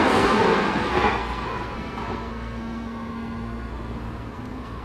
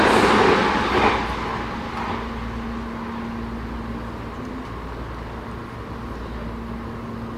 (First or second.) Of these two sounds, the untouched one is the second